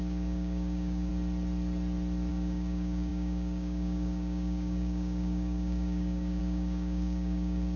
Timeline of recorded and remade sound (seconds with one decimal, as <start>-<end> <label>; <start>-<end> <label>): 0.0-1.1 remade; 1.1-2.3 recorded; 2.3-7.8 remade